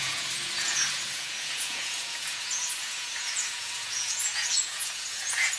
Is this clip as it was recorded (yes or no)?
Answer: no